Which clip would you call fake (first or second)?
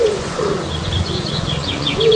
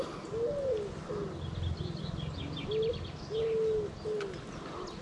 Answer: first